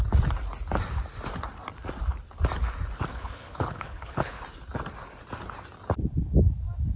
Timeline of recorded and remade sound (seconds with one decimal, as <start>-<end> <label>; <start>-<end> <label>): 0.0-3.1 recorded; 3.1-4.4 remade; 4.4-7.0 recorded